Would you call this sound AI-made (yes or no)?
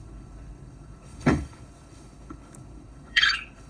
yes